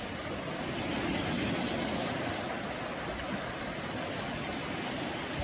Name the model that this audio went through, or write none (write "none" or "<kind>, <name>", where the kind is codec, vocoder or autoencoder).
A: none